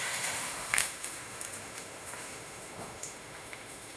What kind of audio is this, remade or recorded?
remade